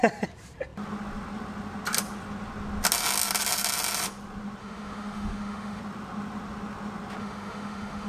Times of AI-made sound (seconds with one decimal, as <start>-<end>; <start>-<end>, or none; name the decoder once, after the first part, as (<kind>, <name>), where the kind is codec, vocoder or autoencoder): 4.6-5.8 (autoencoder, DAC-VAE); 7.2-8.1